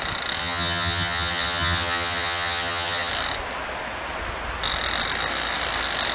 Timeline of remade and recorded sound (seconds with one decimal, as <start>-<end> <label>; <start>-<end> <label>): 0.0-0.4 recorded; 0.4-3.1 remade; 3.1-6.1 recorded